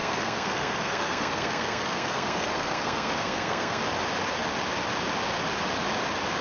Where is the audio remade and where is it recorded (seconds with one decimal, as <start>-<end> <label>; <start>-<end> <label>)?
0.0-3.8 remade; 3.8-6.4 recorded